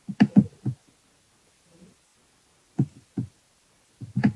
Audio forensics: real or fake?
real